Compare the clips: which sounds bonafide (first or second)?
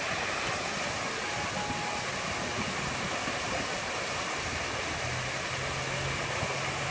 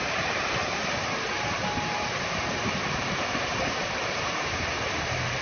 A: first